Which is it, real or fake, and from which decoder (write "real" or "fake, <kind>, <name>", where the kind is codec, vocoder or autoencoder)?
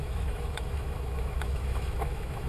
fake, autoencoder, DAC-VAE